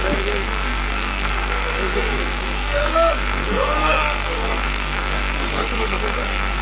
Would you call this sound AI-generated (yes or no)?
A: yes